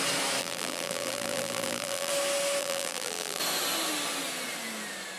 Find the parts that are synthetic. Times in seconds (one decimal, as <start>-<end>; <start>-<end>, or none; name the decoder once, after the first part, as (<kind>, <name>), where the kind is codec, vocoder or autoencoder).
0.4-2.1 (vocoder, BigVGAN v2); 2.6-3.4